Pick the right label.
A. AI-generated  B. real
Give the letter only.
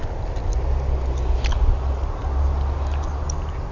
B